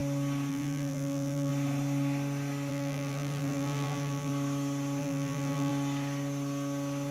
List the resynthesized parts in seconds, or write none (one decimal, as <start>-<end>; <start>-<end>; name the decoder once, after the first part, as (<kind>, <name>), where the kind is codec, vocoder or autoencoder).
0.5-1.5 (vocoder, BigVGAN v2); 2.7-4.3; 5.0-5.7